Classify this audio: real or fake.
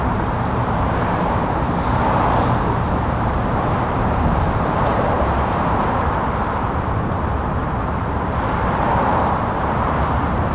fake